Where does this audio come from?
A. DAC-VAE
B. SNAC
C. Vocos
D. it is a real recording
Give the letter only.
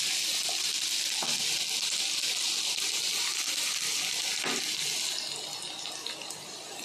D